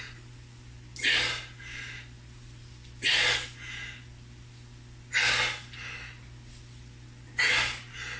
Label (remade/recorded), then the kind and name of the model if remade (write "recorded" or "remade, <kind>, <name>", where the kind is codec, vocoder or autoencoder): recorded